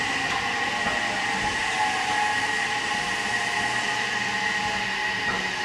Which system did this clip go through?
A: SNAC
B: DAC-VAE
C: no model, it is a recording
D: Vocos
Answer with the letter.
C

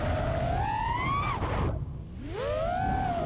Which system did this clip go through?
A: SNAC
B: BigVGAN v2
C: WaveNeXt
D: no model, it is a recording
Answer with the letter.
D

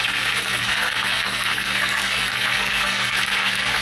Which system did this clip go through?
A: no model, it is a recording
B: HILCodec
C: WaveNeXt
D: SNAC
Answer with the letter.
D